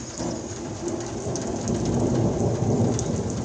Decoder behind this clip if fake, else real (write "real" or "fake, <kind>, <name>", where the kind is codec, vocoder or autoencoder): real